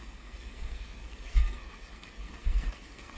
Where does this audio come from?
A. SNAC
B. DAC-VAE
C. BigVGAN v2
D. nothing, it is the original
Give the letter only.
A